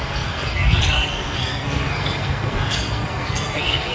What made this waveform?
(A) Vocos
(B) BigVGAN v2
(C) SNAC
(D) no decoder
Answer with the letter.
C